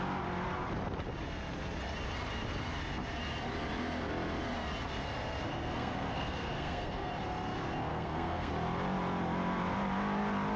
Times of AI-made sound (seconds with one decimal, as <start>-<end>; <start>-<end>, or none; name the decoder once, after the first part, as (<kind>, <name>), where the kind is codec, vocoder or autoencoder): 5.5-7.1 (codec, SNAC); 7.9-8.5